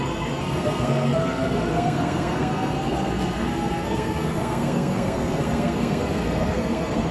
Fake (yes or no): yes